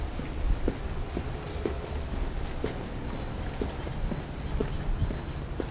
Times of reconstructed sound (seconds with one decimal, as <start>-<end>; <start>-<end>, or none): none